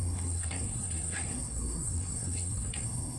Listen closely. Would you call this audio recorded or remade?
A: remade